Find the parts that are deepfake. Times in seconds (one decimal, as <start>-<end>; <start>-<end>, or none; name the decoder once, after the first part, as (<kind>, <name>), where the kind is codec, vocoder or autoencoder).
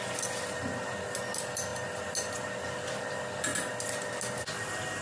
none